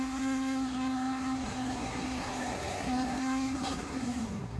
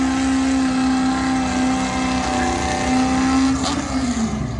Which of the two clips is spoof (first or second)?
first